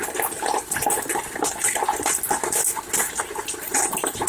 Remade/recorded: recorded